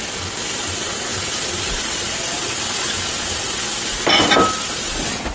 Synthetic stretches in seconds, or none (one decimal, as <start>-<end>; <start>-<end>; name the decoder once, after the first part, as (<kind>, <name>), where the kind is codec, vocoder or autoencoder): none